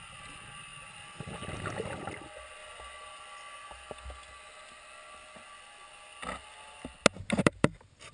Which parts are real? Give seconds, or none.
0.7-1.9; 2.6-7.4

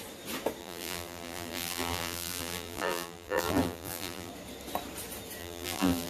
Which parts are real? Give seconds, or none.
0.0-0.6; 4.3-5.4